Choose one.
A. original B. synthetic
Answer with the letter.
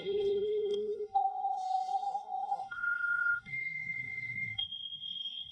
B